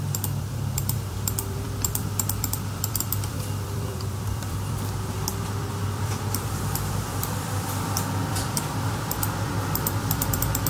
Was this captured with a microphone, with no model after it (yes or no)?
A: no